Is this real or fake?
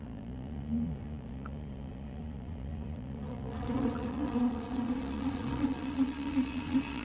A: fake